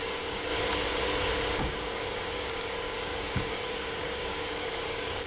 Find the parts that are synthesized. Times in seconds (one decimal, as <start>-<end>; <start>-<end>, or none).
0.0-0.5; 1.6-5.3